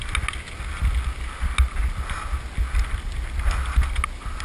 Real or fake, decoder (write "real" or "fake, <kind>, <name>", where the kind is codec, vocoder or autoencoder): real